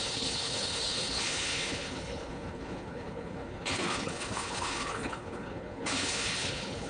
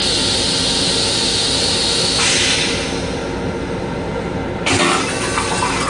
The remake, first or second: first